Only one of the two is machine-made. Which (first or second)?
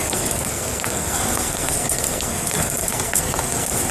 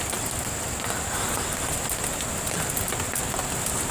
first